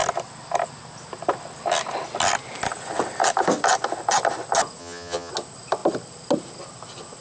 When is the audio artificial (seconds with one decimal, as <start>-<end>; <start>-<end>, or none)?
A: 4.8-5.3